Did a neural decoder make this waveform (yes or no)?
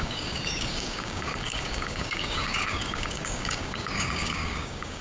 yes